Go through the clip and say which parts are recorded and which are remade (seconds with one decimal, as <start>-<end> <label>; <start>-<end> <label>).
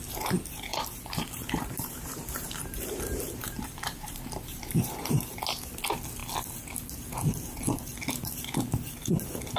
0.0-0.7 recorded; 0.7-5.4 remade; 5.4-9.6 recorded